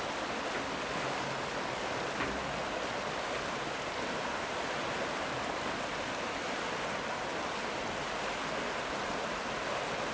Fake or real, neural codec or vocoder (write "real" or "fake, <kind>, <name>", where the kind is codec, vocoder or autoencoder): real